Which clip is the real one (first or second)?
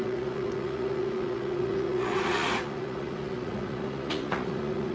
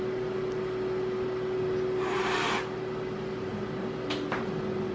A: second